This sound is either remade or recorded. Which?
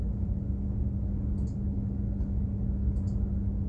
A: recorded